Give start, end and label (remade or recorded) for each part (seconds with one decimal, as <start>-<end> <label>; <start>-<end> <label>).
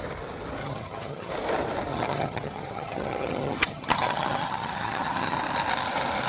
0.0-0.6 recorded; 0.6-1.3 remade; 1.3-1.9 recorded; 1.9-5.4 remade; 5.4-6.3 recorded